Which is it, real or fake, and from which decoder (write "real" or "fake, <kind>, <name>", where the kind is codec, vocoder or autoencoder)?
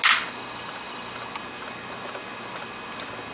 real